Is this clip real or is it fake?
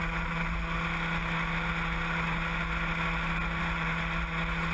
real